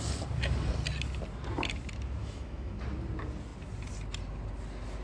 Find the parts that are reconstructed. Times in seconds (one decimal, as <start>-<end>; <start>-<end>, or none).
2.2-2.8